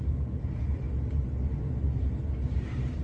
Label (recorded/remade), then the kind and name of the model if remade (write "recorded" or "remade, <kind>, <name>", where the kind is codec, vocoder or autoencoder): recorded